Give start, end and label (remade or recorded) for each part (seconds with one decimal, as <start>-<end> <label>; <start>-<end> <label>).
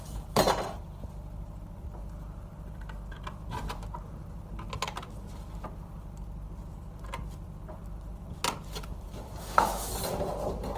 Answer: 0.0-9.4 recorded; 9.4-9.9 remade; 9.9-10.8 recorded